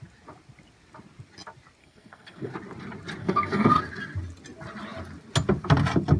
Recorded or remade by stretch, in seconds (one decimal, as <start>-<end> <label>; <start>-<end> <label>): 0.0-1.8 recorded; 1.8-2.5 remade; 2.5-3.2 recorded; 3.2-3.8 remade; 3.8-6.2 recorded